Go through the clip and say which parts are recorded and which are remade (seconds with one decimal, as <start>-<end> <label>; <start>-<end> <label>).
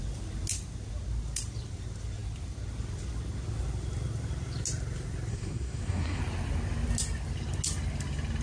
0.0-5.3 recorded; 5.3-6.2 remade; 6.2-8.4 recorded